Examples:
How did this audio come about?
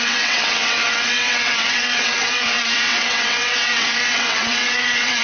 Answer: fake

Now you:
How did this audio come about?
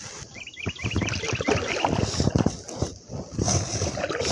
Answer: real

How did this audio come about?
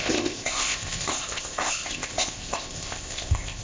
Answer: fake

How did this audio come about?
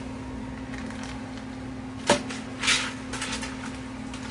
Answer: real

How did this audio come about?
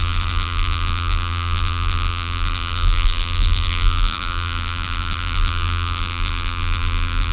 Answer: fake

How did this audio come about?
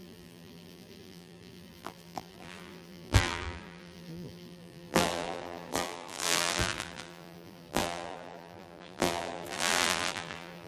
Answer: fake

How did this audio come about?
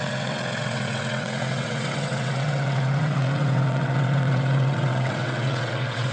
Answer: fake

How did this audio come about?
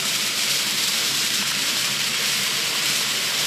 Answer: fake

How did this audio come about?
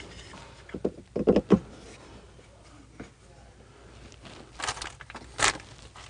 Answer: real